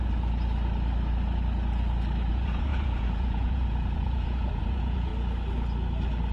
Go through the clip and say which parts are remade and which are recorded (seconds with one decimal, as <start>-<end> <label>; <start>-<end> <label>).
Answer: 0.0-2.3 recorded; 2.3-5.1 remade; 5.1-6.3 recorded